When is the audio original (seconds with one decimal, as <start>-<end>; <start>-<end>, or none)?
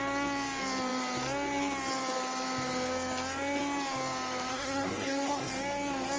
0.0-4.5; 5.5-6.2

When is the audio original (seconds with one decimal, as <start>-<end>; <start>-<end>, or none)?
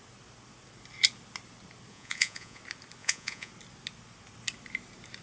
0.0-1.9; 2.6-3.0; 3.5-5.2